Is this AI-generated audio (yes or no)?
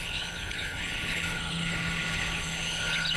yes